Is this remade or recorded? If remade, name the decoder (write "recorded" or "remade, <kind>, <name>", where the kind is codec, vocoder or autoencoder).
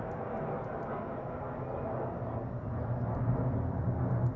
recorded